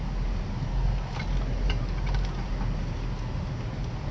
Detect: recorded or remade recorded